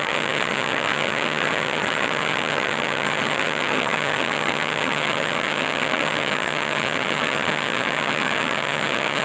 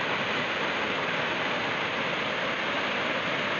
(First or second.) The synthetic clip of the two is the first